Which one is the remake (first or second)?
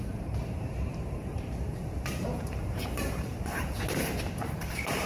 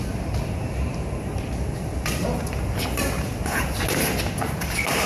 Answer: first